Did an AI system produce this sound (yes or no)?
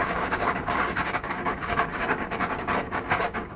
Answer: yes